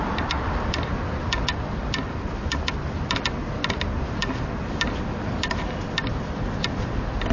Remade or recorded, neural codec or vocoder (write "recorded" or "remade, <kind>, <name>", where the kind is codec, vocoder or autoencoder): recorded